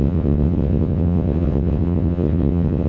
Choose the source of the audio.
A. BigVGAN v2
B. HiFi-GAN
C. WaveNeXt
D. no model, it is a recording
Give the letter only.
C